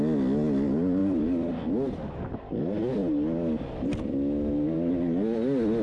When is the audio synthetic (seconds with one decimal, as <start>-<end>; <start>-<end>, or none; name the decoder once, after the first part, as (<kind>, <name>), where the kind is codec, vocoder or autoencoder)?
1.0-1.7 (vocoder, BigVGAN v2)